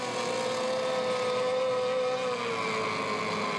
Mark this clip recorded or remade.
recorded